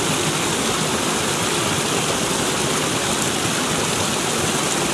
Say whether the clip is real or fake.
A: real